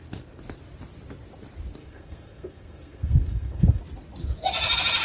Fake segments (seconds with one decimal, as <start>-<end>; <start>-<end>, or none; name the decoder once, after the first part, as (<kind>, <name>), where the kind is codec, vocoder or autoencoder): 1.8-3.8 (codec, SNAC)